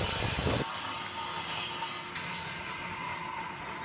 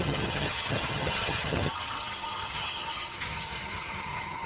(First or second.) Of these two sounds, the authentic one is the first